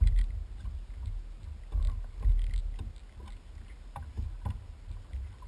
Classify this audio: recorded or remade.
recorded